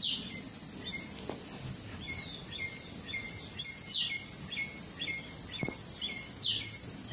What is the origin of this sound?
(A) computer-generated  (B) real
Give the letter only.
B